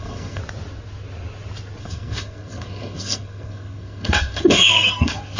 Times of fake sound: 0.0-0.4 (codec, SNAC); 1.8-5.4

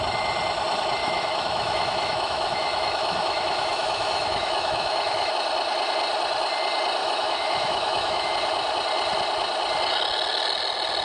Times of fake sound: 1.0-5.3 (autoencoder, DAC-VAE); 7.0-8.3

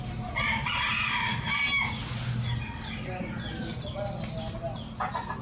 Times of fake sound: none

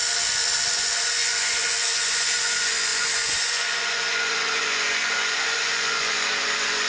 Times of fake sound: 0.7-6.9 (vocoder, Vocos)

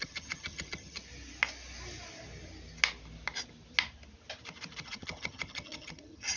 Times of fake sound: 0.0-1.0 (vocoder, HiFi-GAN); 4.8-6.4